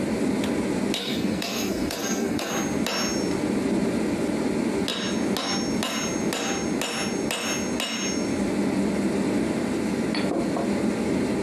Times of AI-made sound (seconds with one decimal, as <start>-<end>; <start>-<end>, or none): 1.0-2.5